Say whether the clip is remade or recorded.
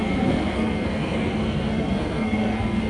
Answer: remade